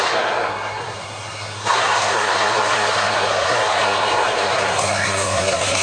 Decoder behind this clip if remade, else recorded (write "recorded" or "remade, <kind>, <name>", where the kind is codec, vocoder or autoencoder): remade, codec, SNAC